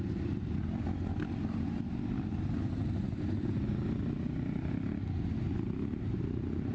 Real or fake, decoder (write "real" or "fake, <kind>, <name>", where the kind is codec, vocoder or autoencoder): real